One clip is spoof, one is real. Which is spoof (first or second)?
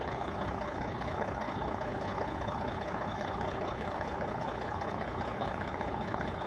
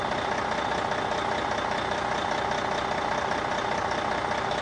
first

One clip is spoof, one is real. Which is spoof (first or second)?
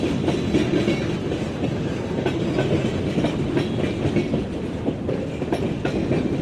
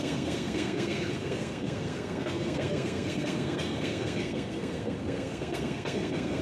second